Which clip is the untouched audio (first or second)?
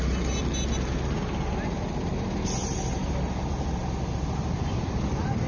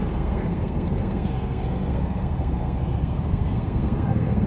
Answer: first